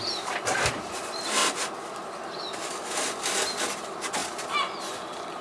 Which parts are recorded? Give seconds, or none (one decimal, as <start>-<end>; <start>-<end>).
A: 0.0-5.4